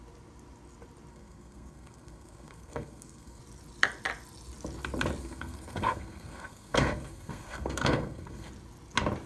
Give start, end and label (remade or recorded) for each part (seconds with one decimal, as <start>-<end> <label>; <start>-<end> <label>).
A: 0.0-1.1 recorded; 1.1-3.4 remade; 3.4-5.2 recorded; 5.2-8.5 remade; 8.5-9.3 recorded